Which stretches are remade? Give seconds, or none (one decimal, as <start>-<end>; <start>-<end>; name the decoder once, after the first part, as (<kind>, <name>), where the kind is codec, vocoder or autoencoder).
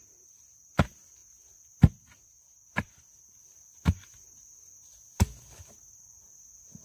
none